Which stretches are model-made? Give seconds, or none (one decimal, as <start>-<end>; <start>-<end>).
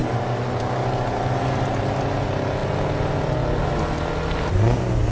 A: none